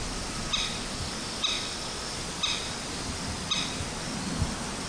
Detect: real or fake real